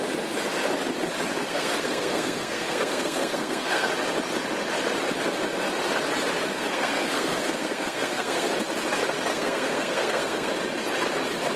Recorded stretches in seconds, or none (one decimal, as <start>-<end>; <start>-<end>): 0.0-1.4; 3.9-6.5; 8.5-9.3; 10.5-11.6

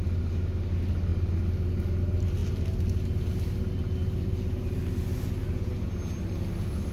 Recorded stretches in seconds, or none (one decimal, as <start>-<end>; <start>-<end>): 0.0-6.9

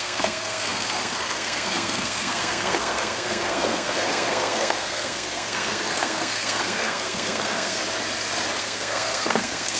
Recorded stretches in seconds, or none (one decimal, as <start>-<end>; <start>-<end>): 7.8-8.6